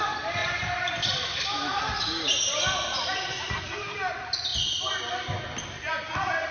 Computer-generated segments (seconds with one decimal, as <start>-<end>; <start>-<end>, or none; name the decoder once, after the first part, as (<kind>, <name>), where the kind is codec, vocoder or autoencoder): 0.4-2.6 (vocoder, BigVGAN v2)